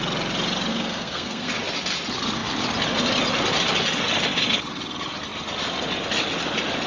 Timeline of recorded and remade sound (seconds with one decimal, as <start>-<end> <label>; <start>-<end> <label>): 0.0-0.7 recorded; 0.7-1.5 remade; 1.5-6.9 recorded